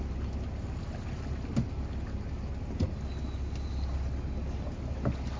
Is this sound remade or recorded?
recorded